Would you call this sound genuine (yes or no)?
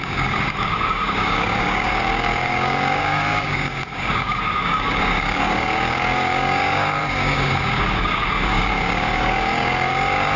no